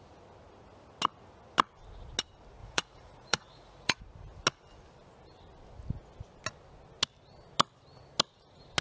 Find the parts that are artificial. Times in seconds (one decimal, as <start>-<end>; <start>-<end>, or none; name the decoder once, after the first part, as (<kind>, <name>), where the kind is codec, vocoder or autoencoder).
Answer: 2.6-4.0 (vocoder, Vocos)

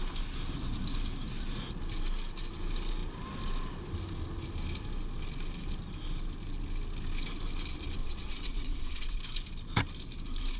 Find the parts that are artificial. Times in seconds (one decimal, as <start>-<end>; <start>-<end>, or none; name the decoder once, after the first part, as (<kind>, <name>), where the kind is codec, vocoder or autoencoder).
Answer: 8.0-9.2 (vocoder, WaveNeXt)

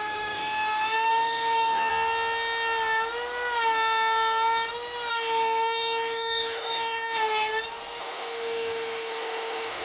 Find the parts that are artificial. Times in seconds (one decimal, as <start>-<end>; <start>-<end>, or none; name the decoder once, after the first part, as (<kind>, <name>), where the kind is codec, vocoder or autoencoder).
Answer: 0.0-1.9 (autoencoder, DAC-VAE); 5.1-7.5; 8.0-9.8

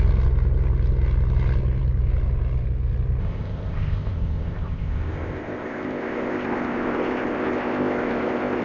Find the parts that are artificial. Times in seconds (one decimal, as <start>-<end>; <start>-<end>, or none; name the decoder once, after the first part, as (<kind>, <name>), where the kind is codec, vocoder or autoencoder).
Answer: 3.2-8.6 (codec, ZipCodec)

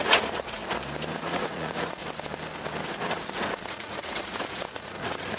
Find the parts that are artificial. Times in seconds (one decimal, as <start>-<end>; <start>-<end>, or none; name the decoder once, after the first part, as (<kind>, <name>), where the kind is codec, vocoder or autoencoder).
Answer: 0.0-0.6 (vocoder, Vocos); 1.2-2.0; 3.7-5.4

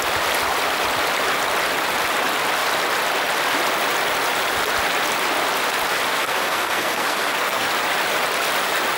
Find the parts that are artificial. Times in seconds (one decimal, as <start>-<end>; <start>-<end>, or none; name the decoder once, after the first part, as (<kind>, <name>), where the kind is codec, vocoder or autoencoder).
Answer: 6.1-7.7 (codec, SNAC)

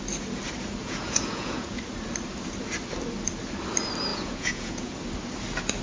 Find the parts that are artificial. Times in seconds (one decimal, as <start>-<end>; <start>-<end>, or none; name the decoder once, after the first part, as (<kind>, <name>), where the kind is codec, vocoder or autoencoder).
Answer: 0.8-1.8 (vocoder, Vocos); 4.1-5.0